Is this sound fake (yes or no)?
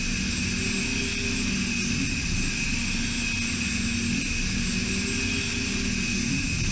no